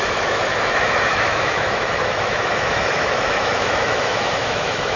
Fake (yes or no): yes